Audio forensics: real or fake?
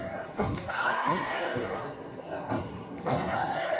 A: fake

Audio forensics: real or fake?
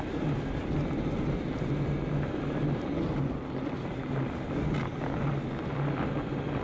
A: real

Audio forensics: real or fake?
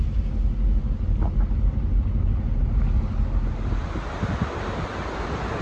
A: real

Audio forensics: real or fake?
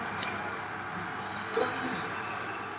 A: real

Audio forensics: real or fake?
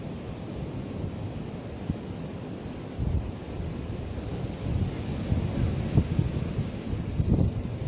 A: real